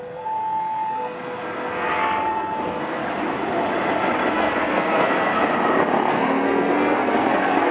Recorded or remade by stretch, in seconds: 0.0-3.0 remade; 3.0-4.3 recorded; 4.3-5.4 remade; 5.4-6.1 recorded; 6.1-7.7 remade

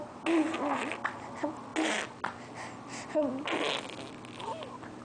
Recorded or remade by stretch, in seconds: 0.0-5.0 recorded

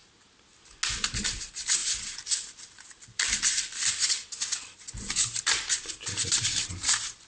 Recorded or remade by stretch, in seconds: 0.0-1.4 recorded; 1.4-7.3 remade

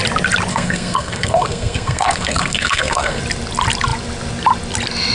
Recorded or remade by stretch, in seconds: 0.0-0.5 recorded; 0.5-3.2 remade; 3.2-5.1 recorded

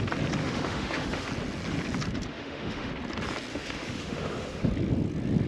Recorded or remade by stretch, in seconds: 0.0-0.4 recorded; 0.4-1.3 remade; 1.3-2.3 recorded; 2.3-2.9 remade; 2.9-3.5 recorded; 3.5-4.7 remade; 4.7-5.5 recorded

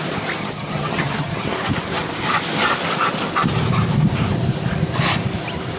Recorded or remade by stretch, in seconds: 0.0-0.4 recorded; 0.4-1.5 remade; 1.5-5.8 recorded